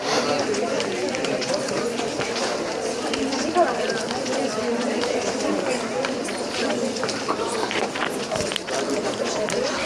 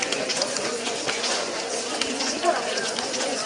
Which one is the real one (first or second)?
first